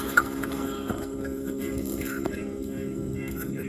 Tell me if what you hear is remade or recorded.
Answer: remade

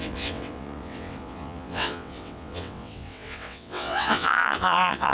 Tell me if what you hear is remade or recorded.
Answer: remade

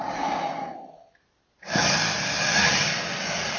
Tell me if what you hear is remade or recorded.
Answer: recorded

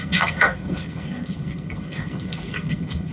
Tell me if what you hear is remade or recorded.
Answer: remade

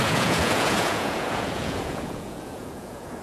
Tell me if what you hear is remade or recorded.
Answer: remade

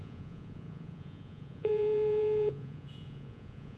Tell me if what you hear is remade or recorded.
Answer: remade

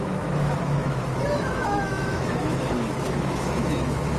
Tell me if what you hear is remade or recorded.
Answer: remade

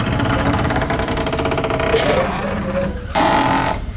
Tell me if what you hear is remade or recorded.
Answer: remade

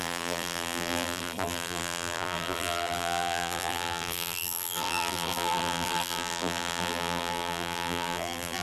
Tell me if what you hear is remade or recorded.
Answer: remade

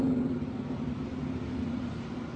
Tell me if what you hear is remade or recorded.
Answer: recorded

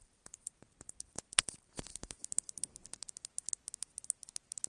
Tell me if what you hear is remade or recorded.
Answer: remade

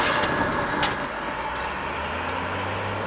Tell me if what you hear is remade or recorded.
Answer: recorded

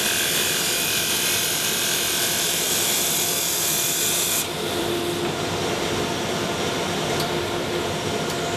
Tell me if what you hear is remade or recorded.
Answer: remade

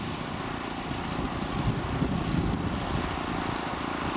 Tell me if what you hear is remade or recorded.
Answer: recorded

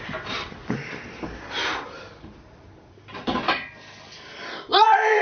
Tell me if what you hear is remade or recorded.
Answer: remade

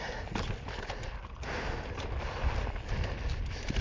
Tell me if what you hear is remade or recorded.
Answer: recorded